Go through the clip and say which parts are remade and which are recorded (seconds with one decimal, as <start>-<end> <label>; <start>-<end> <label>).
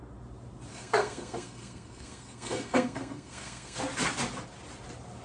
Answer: 0.0-0.7 recorded; 0.7-3.8 remade; 3.8-5.2 recorded